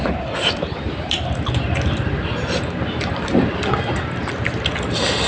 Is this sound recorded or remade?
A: recorded